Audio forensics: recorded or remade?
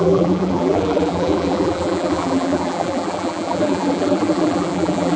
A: remade